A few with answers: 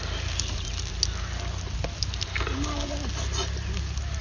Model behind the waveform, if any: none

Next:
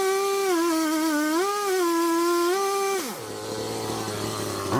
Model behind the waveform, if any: none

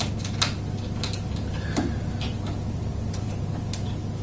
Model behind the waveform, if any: none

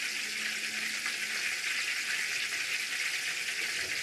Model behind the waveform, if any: none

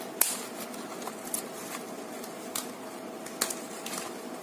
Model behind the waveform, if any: none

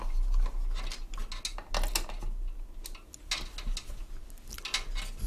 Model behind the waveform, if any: none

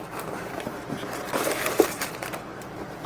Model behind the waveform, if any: vocoder, BigVGAN v2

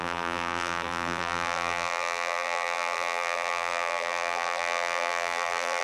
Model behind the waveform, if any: vocoder, BigVGAN v2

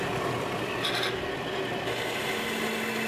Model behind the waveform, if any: none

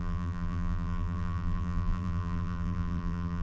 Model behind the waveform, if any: vocoder, BigVGAN v2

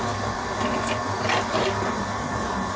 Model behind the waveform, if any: vocoder, BigVGAN v2